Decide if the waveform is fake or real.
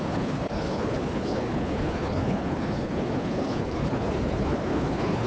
fake